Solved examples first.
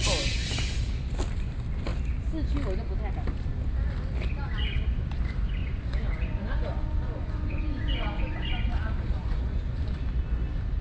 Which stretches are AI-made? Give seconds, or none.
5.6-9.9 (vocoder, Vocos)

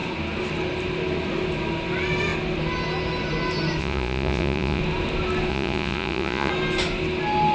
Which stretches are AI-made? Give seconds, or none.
3.8-4.8 (vocoder, Vocos); 5.5-6.5